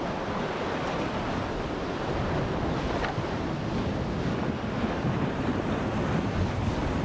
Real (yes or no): yes